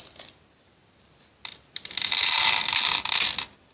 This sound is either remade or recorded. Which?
recorded